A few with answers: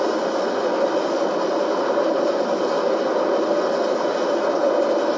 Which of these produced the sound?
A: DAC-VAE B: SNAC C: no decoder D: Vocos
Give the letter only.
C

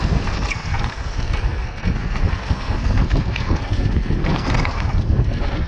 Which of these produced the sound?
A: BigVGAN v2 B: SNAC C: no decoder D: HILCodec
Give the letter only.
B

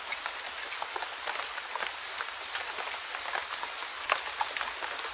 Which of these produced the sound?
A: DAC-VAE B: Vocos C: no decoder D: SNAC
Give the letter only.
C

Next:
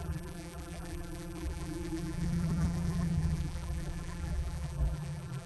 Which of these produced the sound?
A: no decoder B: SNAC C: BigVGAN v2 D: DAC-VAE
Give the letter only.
C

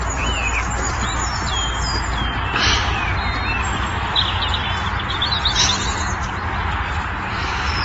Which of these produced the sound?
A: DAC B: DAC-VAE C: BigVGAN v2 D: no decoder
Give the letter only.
D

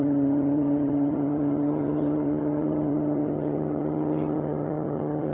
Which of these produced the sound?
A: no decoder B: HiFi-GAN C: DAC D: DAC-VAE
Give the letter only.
B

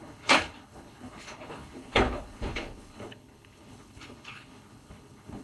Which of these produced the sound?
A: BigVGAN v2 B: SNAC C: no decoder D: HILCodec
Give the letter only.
D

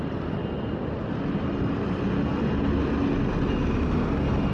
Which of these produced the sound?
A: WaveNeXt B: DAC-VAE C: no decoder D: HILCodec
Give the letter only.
C